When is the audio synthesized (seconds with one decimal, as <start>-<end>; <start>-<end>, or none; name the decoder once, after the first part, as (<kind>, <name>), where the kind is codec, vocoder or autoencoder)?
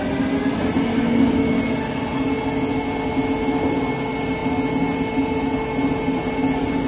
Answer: 0.9-1.6 (codec, DAC)